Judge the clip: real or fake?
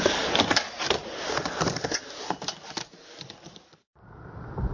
real